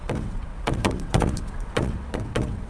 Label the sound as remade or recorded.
remade